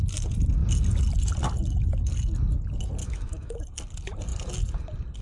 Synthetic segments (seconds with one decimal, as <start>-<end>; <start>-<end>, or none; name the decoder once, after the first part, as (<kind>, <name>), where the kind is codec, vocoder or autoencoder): 3.0-3.6 (autoencoder, DAC-VAE)